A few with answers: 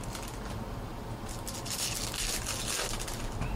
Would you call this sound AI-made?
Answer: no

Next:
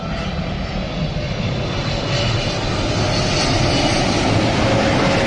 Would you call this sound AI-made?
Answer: no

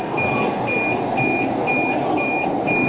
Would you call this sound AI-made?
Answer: no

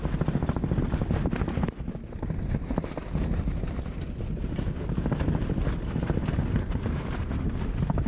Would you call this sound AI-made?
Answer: no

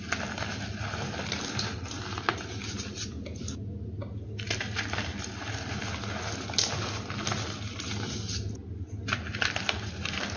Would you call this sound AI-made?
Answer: no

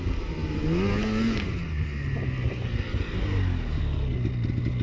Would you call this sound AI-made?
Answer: no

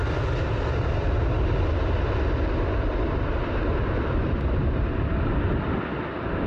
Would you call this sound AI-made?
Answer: no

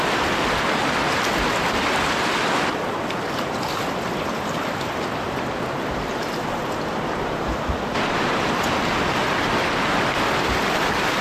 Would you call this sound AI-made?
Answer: no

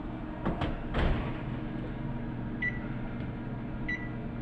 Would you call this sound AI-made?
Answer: no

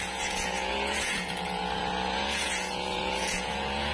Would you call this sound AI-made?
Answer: yes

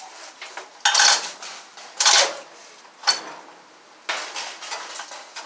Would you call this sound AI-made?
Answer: no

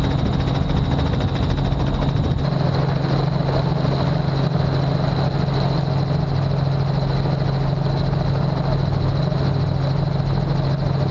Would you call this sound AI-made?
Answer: no